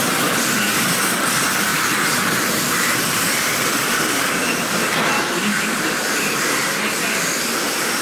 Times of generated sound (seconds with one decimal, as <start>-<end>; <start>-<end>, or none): 1.7-3.2; 5.4-6.7